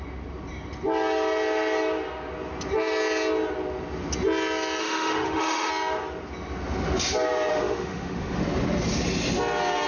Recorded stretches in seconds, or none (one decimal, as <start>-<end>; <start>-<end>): 0.0-4.8; 5.7-7.5; 8.4-9.9